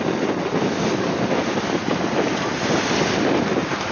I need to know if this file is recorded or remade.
recorded